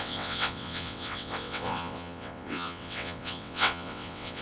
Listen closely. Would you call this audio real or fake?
fake